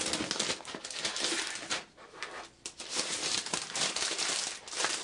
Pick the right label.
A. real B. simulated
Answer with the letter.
A